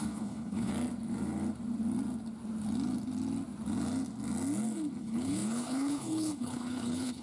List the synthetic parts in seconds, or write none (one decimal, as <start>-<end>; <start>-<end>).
0.0-0.7; 5.0-7.2